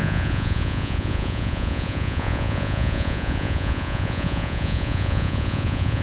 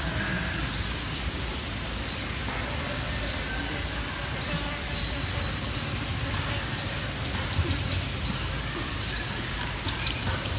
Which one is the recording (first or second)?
second